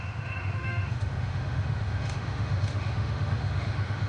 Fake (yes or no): yes